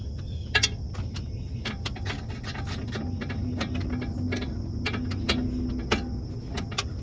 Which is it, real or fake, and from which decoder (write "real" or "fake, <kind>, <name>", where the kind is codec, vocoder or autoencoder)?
real